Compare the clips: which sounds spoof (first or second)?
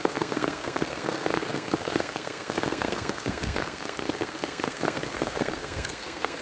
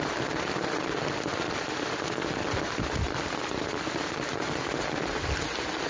first